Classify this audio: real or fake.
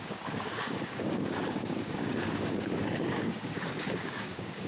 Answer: fake